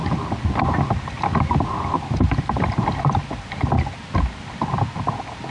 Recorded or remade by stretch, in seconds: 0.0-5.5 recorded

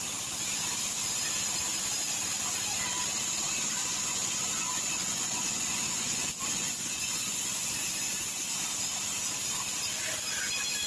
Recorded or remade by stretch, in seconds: 0.0-3.8 recorded; 3.8-8.5 remade; 8.5-10.9 recorded

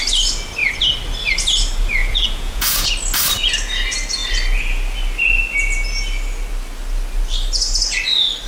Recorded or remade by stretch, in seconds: 0.0-2.0 recorded; 2.0-2.9 remade; 2.9-8.5 recorded

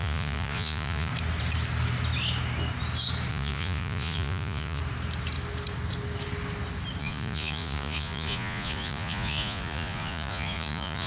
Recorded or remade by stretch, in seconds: 0.0-1.1 remade; 1.1-3.3 recorded; 3.3-4.8 remade; 4.8-7.0 recorded; 7.0-11.1 remade